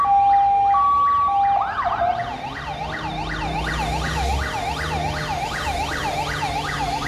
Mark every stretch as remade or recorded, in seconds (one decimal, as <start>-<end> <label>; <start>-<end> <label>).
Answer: 0.0-7.1 recorded